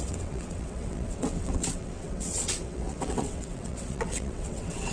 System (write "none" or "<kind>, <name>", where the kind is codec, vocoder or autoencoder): vocoder, WaveNeXt